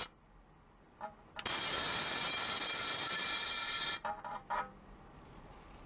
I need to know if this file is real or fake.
real